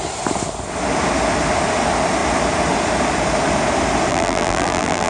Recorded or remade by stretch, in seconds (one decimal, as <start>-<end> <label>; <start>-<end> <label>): 0.0-4.1 recorded; 4.1-5.1 remade